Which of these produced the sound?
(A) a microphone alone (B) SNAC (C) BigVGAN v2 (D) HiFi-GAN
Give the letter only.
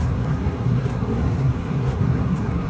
B